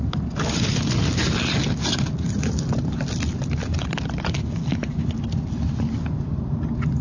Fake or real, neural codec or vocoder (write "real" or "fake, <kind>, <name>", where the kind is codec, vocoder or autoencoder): real